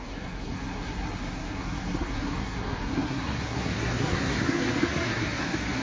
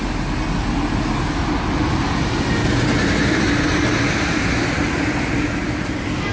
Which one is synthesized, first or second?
first